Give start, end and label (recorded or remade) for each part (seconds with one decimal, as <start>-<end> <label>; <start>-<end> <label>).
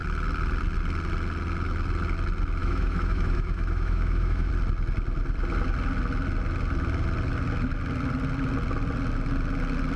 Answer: 0.0-2.6 recorded; 2.6-4.5 remade; 4.5-10.0 recorded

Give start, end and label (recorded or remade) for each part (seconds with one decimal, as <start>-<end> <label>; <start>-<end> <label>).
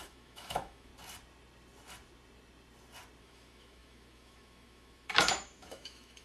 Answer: 0.0-0.9 remade; 0.9-3.2 recorded; 3.2-6.2 remade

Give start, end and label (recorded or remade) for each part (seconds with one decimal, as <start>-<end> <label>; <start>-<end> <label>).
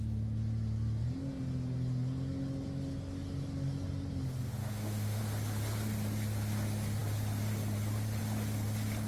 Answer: 0.0-4.6 recorded; 4.6-5.2 remade; 5.2-9.1 recorded